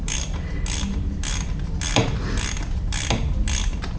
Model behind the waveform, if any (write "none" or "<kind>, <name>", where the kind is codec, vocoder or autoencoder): none